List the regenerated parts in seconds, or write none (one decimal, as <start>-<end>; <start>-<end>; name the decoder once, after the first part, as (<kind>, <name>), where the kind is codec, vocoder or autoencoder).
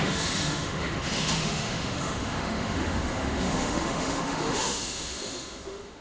0.0-6.0 (autoencoder, DAC-VAE)